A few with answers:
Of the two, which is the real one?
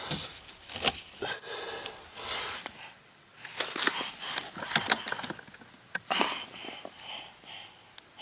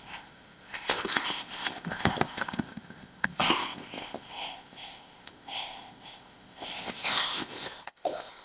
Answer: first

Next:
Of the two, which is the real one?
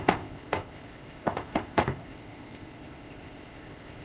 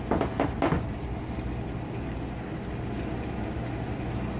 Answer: second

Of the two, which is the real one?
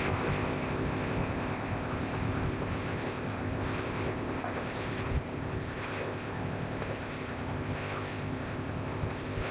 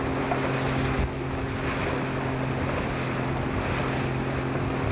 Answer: second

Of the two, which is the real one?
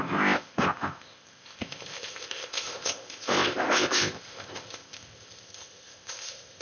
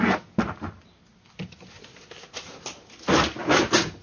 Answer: second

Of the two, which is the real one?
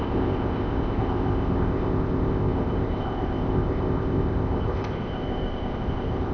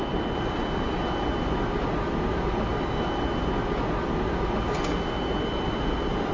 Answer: second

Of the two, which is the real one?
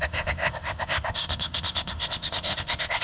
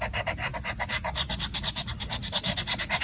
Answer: second